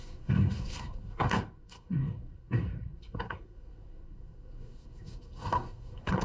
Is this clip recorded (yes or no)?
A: no